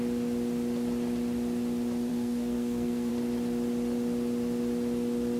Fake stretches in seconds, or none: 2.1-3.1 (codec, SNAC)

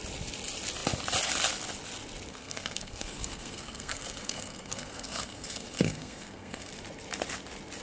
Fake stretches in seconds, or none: 2.3-6.7 (codec, SNAC)